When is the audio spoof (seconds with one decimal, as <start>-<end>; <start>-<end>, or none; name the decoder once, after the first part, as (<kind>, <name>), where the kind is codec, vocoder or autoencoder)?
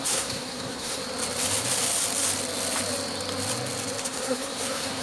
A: 0.0-1.0 (codec, SNAC); 4.0-5.0